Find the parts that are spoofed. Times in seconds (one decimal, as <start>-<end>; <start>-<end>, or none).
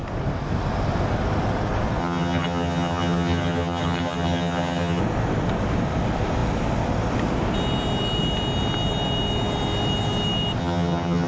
2.0-5.0; 10.6-11.3